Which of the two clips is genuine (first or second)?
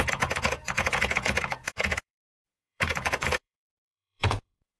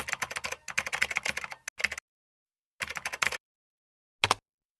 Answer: second